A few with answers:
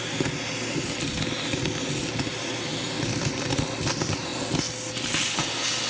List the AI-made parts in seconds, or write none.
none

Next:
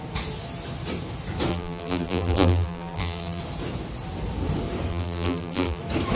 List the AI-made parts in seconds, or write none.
1.5-3.4 (vocoder, BigVGAN v2); 4.9-5.8

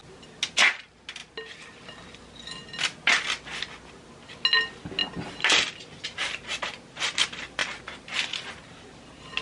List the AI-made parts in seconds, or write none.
7.6-8.2 (vocoder, BigVGAN v2)

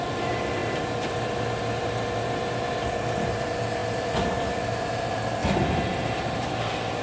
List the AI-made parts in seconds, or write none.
0.0-5.4 (vocoder, BigVGAN v2)

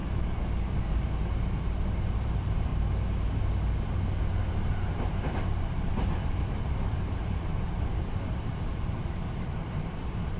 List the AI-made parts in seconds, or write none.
1.9-2.7 (vocoder, BigVGAN v2); 4.4-10.4

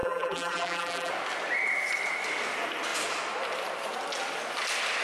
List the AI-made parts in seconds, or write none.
0.0-1.1 (vocoder, BigVGAN v2)